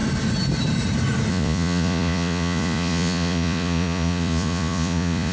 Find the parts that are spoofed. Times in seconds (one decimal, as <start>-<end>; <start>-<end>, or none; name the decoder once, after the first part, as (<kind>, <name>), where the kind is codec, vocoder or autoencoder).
1.3-5.3 (vocoder, Vocos)